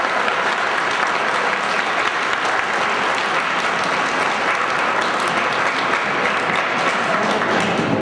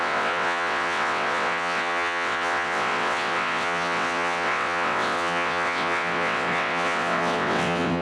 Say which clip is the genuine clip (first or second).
first